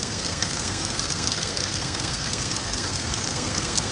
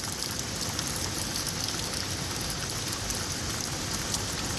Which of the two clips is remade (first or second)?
first